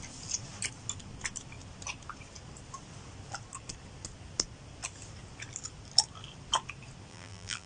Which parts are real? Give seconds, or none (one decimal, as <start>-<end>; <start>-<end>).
0.0-7.1